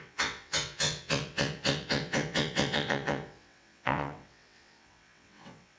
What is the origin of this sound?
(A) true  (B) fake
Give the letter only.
B